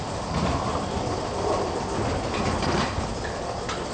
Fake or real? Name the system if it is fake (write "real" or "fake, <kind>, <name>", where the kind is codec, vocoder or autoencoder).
real